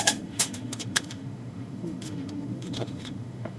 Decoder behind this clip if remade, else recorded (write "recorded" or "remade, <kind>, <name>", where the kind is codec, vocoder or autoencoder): remade, autoencoder, DAC-VAE